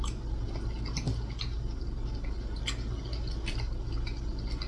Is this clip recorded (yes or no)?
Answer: yes